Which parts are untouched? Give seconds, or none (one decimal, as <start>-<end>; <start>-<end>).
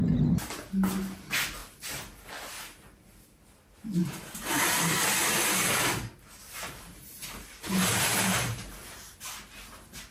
0.0-1.6; 2.3-4.0; 4.6-6.6; 8.8-10.1